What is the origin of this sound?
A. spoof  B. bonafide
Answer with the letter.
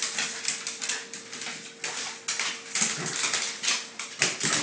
B